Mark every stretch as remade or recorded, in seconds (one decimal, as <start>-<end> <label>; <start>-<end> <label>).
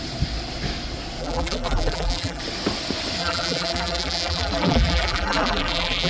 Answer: 0.0-1.2 recorded; 1.2-2.4 remade; 2.4-3.2 recorded; 3.2-6.1 remade